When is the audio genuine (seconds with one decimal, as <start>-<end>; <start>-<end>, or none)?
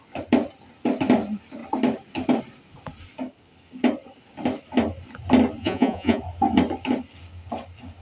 0.0-5.6; 6.2-8.0